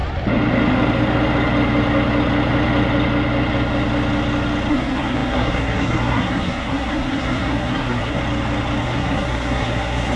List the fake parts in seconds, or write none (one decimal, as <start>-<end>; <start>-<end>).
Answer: 4.7-8.2; 8.8-10.2